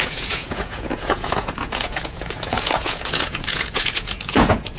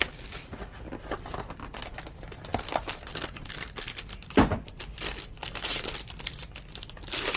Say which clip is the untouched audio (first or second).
second